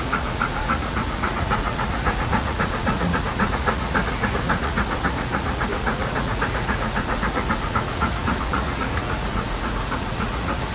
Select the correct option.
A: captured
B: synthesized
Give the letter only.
B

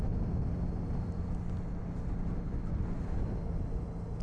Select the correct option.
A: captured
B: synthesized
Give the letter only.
A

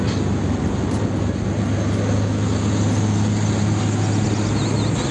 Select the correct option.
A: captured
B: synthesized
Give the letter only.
A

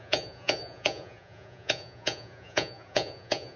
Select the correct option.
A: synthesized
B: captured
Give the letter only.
A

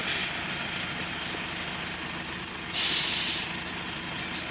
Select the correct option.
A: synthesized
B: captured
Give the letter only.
B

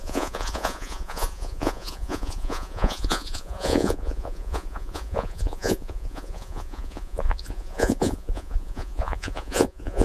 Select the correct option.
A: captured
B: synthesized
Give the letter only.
B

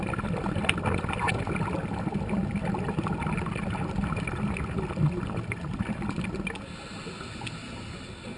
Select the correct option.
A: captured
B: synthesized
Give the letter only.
A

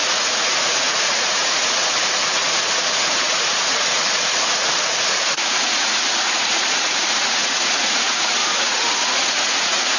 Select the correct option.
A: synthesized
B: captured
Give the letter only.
A